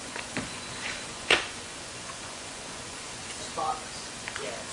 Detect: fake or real fake